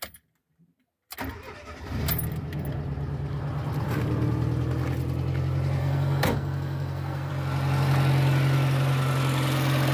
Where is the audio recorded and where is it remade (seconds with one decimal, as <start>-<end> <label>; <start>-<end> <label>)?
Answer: 0.0-5.8 recorded; 5.8-7.3 remade; 7.3-9.9 recorded